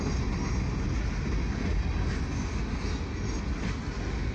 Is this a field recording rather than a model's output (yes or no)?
yes